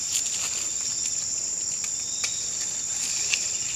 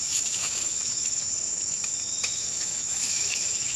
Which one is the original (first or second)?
first